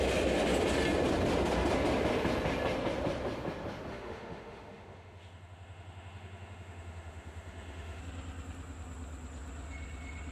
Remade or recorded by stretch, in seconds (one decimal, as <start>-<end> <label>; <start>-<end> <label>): 0.0-3.9 recorded; 3.9-8.0 remade; 8.0-10.3 recorded

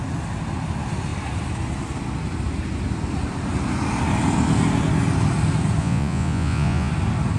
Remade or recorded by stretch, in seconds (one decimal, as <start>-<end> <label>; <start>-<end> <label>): 0.0-5.8 recorded; 5.8-6.9 remade; 6.9-7.4 recorded